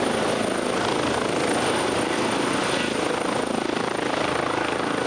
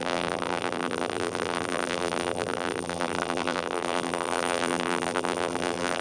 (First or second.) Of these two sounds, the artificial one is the second